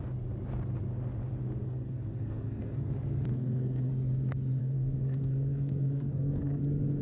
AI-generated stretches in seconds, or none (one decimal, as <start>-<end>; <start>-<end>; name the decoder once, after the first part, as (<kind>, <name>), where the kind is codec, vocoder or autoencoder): 1.6-2.9 (codec, SNAC); 3.3-3.9; 4.6-6.6